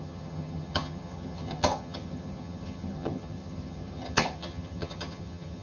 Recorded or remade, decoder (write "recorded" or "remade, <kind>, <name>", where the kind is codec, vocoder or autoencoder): remade, vocoder, HiFi-GAN